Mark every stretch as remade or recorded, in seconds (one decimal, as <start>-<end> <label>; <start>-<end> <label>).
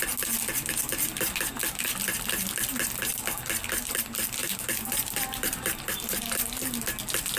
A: 0.0-4.4 recorded; 4.4-6.7 remade; 6.7-7.4 recorded